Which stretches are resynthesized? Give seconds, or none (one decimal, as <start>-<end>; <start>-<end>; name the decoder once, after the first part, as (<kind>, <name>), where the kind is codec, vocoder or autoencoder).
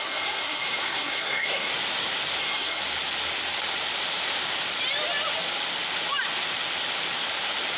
0.0-1.7 (codec, SNAC); 2.4-2.8